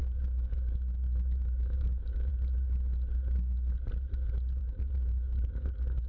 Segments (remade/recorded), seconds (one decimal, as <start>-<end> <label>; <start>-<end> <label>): 0.0-2.3 remade; 2.3-4.6 recorded; 4.6-6.1 remade